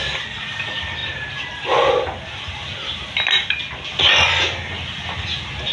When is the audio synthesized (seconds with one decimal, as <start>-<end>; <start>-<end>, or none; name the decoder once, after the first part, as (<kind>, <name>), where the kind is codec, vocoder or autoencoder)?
none